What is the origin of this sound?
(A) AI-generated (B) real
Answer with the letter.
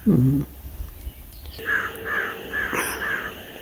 A